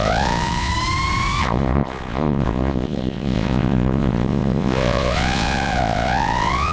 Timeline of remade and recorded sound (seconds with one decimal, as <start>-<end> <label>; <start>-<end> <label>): 0.0-0.7 remade; 0.7-1.4 recorded; 1.4-6.7 remade